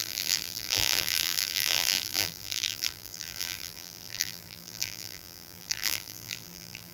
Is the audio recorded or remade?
remade